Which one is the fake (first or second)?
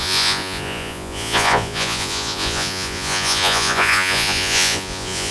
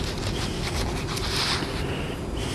first